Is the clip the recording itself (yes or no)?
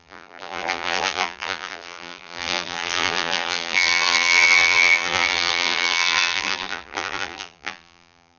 no